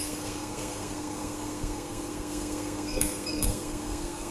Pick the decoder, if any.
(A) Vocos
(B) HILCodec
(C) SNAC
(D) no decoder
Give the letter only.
C